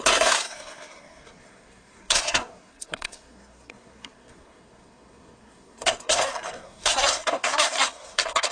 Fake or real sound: fake